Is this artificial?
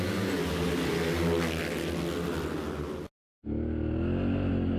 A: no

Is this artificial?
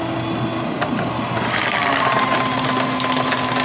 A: no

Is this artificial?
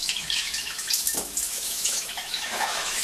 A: yes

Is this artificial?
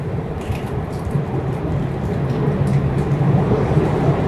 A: no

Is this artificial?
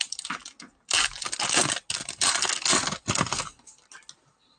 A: no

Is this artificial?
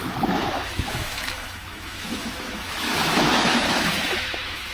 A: yes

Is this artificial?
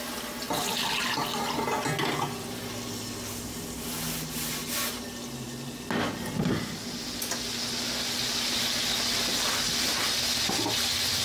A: no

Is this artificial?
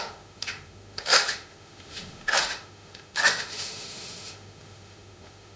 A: yes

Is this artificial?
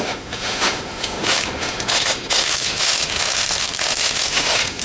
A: yes